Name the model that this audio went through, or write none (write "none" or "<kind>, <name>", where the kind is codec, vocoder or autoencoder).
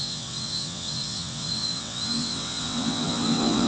vocoder, WaveNeXt